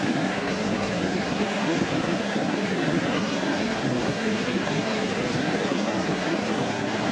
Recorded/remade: remade